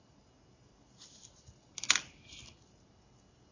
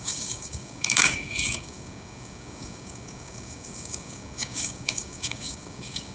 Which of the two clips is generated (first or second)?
second